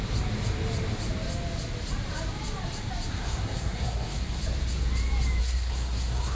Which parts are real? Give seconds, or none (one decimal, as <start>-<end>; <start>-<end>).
0.0-3.1; 4.4-5.4